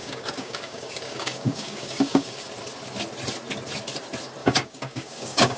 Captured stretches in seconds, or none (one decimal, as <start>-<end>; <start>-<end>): 2.5-4.4